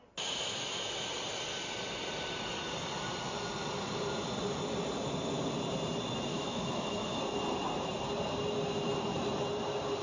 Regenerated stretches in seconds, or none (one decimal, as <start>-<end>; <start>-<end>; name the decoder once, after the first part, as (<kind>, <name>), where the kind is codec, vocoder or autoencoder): 6.3-7.2 (autoencoder, DAC-VAE)